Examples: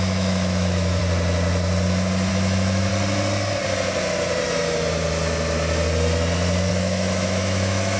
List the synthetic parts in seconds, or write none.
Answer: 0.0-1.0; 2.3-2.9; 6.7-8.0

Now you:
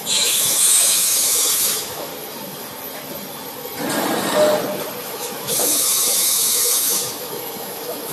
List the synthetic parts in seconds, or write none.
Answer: 0.0-2.1; 5.0-8.1

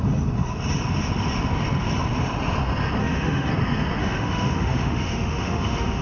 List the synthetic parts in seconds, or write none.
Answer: 3.0-3.5; 4.0-6.0

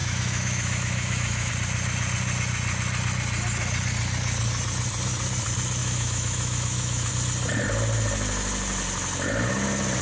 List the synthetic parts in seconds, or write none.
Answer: 0.0-1.5; 5.8-7.1

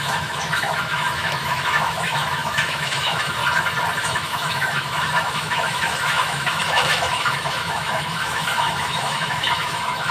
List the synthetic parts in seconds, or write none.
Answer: 0.0-3.4; 4.0-10.1

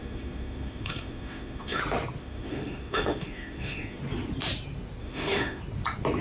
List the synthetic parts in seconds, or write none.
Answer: 0.0-1.8; 2.2-4.0; 5.0-5.6

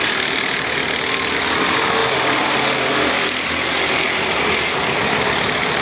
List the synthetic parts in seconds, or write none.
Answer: none